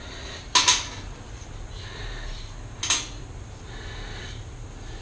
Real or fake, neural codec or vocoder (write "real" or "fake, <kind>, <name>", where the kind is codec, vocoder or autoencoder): real